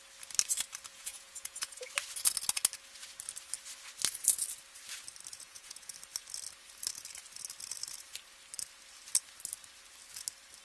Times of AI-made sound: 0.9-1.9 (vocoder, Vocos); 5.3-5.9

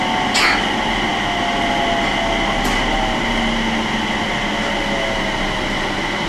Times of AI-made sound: none